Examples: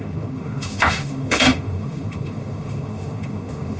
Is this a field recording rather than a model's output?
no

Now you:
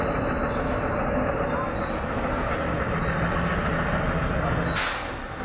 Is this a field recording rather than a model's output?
yes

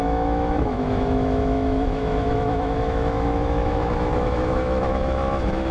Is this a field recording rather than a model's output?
no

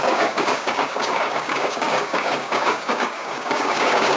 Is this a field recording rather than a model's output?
no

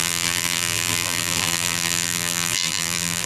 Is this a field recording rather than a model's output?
no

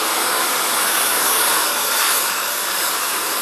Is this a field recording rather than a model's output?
no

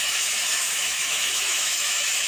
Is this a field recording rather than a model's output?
no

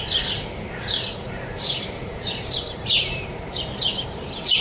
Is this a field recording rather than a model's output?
no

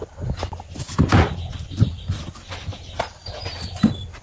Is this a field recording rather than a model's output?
yes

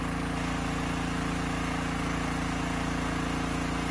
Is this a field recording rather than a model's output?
yes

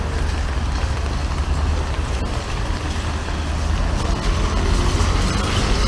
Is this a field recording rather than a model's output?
yes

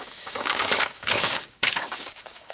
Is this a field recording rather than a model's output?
no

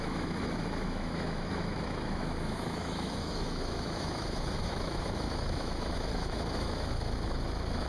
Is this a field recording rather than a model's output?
no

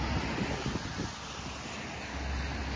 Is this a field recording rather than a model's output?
yes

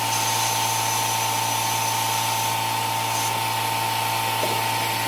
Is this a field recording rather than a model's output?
yes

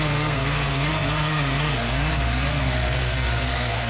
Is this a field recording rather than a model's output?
no